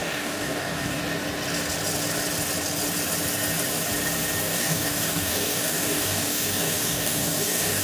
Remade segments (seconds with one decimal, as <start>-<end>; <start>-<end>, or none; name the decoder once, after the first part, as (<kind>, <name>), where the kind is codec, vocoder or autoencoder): 0.0-1.0 (codec, DAC); 4.4-7.8